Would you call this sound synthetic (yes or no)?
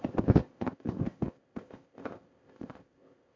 yes